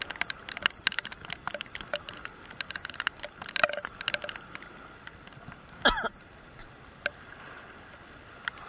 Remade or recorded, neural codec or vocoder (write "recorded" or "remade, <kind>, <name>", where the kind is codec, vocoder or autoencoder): recorded